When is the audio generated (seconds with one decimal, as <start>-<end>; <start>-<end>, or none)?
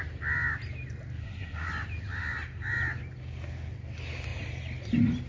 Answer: 1.2-1.7